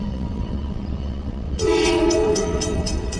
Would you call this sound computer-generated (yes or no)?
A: yes